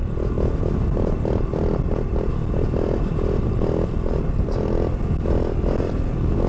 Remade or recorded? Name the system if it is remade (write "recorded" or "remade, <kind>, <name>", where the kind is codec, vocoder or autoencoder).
recorded